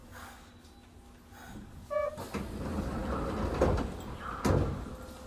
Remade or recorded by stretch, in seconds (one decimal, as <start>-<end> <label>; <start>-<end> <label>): 0.0-0.5 remade; 0.5-1.5 recorded; 1.5-2.1 remade; 2.1-5.3 recorded